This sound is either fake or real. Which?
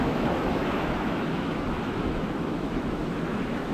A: fake